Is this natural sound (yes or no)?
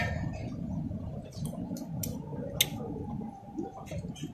yes